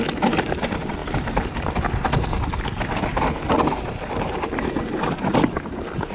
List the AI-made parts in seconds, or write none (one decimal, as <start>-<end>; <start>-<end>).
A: 3.1-4.6